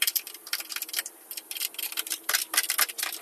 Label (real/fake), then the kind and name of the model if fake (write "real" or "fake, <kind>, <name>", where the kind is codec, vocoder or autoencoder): fake, vocoder, BigVGAN v2